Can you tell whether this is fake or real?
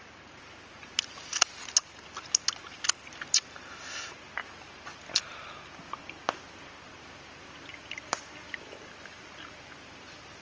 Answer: real